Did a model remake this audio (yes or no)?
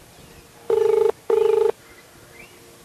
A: no